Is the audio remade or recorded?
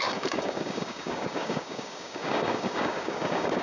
remade